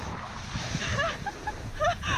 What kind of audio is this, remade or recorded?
recorded